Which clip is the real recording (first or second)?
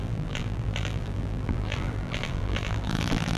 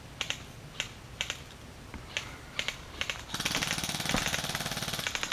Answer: second